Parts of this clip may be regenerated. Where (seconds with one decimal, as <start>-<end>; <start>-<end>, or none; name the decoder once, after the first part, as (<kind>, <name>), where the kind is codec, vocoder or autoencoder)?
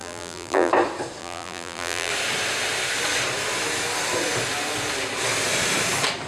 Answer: 0.0-0.7 (vocoder, BigVGAN v2); 1.2-2.1